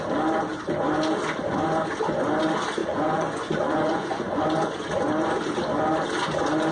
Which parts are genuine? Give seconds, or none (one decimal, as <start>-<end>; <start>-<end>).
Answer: 0.0-2.8; 4.9-6.7